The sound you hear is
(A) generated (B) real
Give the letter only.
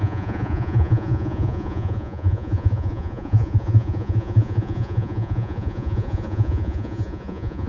A